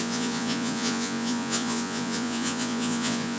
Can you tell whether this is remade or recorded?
remade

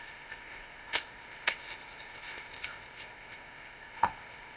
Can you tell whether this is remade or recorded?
remade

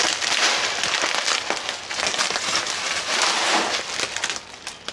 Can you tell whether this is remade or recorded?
recorded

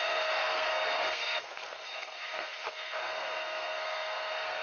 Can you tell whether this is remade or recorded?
remade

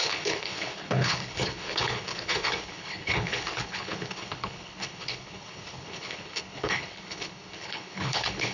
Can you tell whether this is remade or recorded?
remade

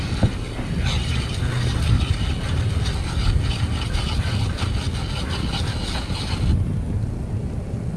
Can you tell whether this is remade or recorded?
recorded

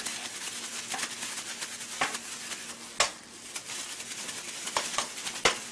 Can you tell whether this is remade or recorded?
recorded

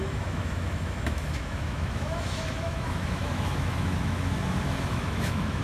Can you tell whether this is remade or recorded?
remade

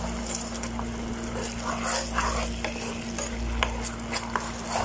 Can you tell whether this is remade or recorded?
recorded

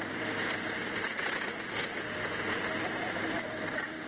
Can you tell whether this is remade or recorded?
recorded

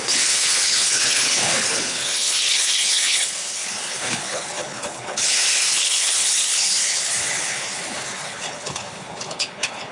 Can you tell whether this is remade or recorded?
remade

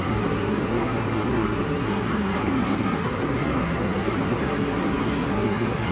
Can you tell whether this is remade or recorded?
remade